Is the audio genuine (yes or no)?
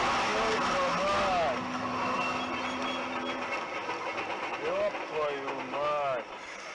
yes